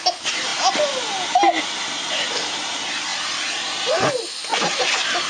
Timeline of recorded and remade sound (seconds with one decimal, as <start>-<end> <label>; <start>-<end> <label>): 0.0-5.3 recorded